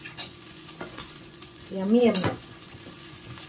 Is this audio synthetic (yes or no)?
yes